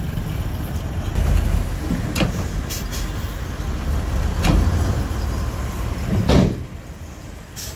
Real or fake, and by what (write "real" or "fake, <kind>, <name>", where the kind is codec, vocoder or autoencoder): real